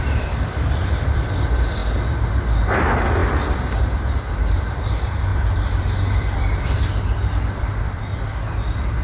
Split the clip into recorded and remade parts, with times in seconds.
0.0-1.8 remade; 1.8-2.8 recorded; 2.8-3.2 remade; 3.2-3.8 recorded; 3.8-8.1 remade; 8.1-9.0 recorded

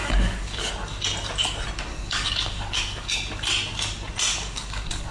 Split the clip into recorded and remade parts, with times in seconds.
0.0-0.7 remade; 0.7-1.9 recorded; 1.9-3.1 remade; 3.1-4.3 recorded; 4.3-5.1 remade

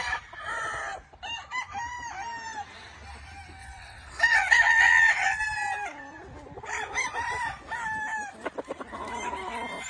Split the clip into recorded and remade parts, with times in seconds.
0.0-3.6 recorded; 3.6-5.4 remade; 5.4-9.9 recorded

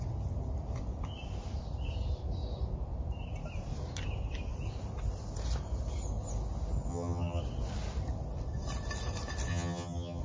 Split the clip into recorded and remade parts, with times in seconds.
0.0-6.9 recorded; 6.9-7.4 remade; 7.4-9.5 recorded; 9.5-10.2 remade

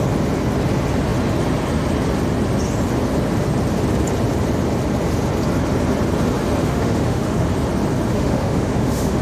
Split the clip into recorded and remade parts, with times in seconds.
0.0-6.6 recorded; 6.6-7.5 remade; 7.5-8.1 recorded; 8.1-9.2 remade

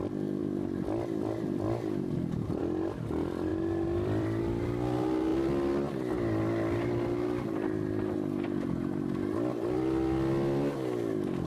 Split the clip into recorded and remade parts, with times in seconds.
0.0-0.4 recorded; 0.4-2.6 remade; 2.6-3.5 recorded; 3.5-4.4 remade; 4.4-11.5 recorded

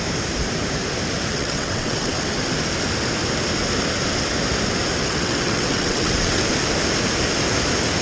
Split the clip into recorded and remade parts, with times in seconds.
0.0-1.3 recorded; 1.3-2.1 remade; 2.1-5.0 recorded; 5.0-6.4 remade; 6.4-8.0 recorded

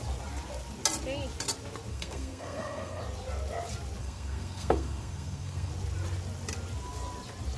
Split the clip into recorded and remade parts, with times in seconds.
0.0-1.9 recorded; 1.9-3.0 remade; 3.0-4.0 recorded; 4.0-5.7 remade; 5.7-7.6 recorded